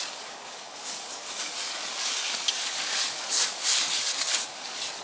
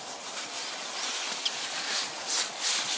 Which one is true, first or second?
second